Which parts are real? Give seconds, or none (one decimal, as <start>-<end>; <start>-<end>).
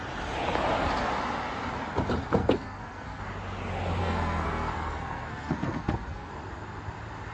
0.0-2.4; 3.2-4.0; 6.3-7.3